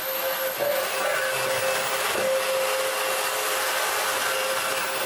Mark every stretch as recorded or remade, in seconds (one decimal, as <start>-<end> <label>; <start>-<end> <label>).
0.0-5.1 recorded